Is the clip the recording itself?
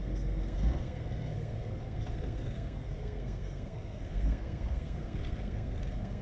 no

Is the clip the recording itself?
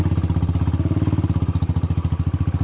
yes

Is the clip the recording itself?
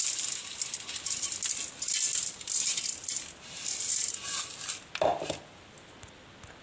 yes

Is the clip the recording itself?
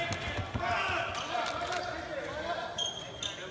yes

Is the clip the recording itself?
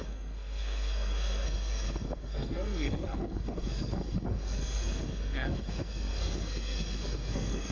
no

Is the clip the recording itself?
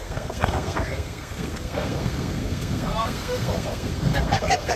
no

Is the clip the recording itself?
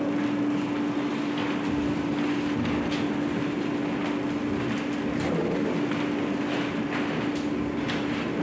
yes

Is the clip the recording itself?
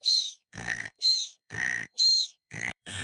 no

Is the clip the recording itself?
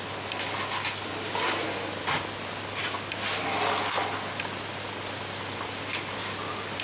yes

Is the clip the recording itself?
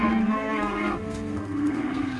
no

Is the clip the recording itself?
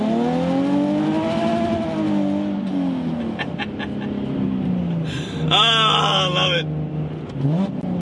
yes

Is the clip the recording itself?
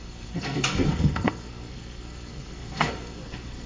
no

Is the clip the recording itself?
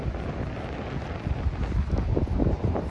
yes